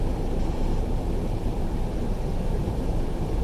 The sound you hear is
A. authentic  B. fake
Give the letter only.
B